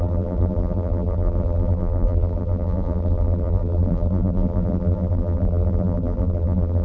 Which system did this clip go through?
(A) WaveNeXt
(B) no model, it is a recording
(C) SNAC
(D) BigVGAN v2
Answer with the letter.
D